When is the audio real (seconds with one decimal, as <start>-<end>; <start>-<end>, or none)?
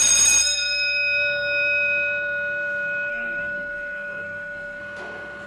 0.0-3.1; 4.8-5.5